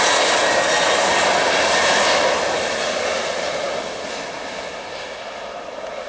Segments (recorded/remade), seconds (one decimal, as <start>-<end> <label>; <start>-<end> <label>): 0.0-6.1 recorded